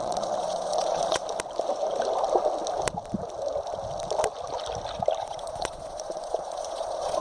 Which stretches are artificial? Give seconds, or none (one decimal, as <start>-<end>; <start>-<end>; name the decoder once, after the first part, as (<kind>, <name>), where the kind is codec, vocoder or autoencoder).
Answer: 0.0-1.2 (vocoder, Vocos); 5.2-7.2